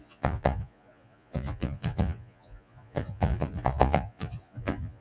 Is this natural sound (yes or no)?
no